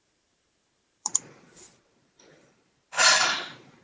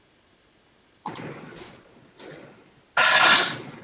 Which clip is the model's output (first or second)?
first